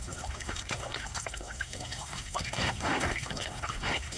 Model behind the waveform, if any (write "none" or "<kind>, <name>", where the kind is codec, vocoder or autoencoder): codec, SNAC